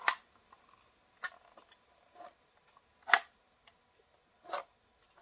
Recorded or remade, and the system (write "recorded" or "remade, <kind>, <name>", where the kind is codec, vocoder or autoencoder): recorded